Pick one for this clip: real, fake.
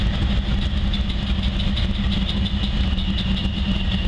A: real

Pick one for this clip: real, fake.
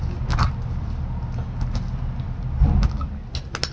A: real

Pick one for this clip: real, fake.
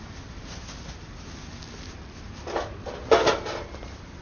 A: real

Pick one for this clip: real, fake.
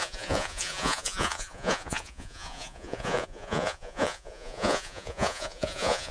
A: fake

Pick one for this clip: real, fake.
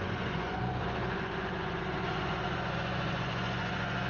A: fake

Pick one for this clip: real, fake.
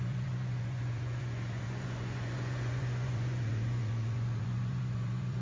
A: fake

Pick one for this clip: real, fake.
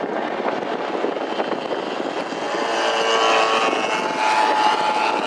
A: real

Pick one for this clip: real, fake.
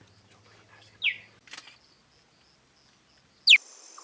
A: real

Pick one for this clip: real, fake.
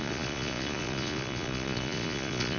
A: fake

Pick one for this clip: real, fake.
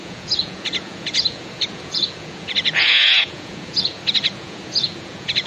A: fake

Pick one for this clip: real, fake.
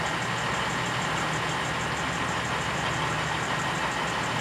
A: real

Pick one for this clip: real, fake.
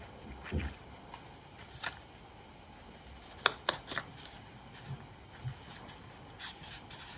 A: real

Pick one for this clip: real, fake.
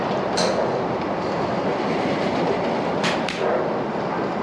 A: real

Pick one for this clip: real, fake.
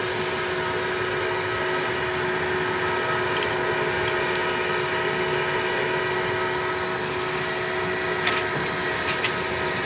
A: real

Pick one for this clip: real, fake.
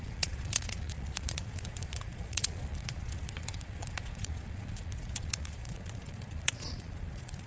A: fake